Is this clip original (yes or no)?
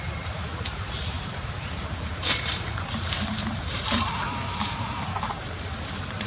no